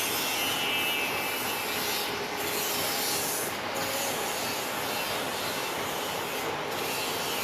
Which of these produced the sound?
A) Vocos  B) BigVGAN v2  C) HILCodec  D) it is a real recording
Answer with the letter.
D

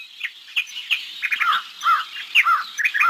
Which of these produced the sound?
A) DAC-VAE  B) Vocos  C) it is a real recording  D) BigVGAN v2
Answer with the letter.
C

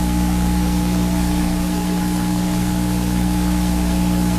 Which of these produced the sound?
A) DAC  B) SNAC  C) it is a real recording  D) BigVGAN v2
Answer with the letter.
B